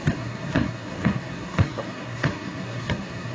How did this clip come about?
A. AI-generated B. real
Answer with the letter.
A